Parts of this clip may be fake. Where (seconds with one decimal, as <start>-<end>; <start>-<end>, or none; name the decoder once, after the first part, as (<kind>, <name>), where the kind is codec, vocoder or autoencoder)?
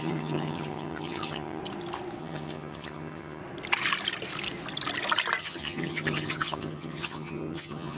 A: 0.0-1.6 (vocoder, HiFi-GAN); 2.2-3.4; 5.4-8.0